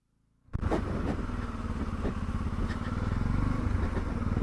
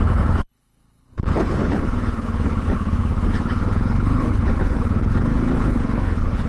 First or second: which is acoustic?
first